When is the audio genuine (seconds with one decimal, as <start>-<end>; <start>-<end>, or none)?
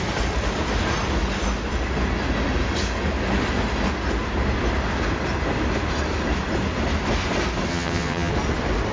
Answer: 0.0-7.7; 8.3-8.9